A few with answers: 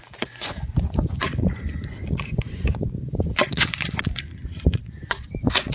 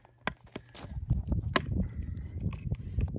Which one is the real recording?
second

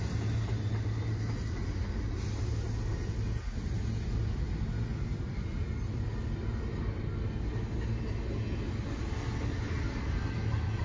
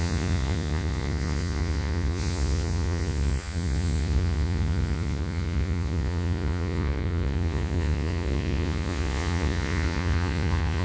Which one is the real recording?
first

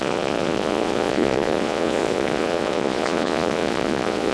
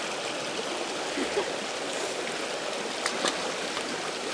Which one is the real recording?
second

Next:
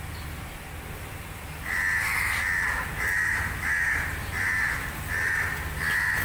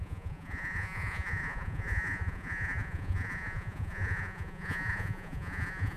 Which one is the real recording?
first